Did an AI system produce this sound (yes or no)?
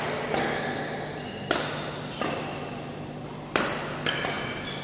no